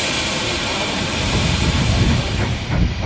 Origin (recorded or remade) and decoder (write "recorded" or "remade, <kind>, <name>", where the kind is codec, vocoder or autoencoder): remade, vocoder, BigVGAN v2